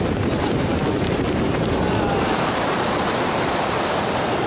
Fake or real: fake